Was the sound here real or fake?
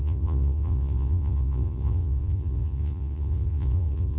fake